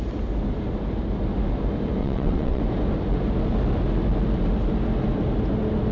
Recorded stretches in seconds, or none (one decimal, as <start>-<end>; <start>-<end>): 0.0-2.0; 2.6-5.9